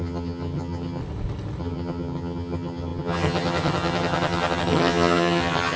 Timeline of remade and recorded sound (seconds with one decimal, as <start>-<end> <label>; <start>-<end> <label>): 0.0-1.0 remade; 1.0-1.6 recorded; 1.6-5.8 remade